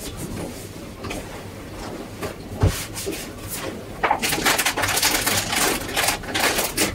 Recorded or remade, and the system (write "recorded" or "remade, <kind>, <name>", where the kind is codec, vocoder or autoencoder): recorded